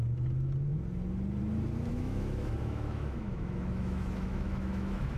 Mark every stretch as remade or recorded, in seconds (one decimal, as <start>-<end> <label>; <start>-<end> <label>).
0.0-1.9 recorded; 1.9-5.2 remade